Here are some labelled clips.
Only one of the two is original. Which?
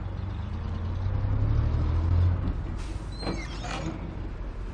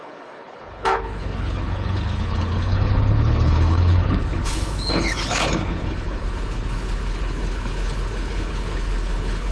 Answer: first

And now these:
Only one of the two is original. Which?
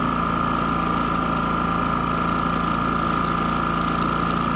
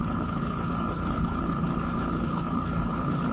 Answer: first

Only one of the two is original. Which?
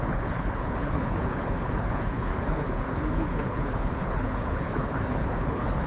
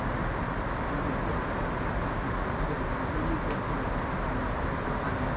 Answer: second